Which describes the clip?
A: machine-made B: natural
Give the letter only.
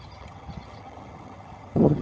A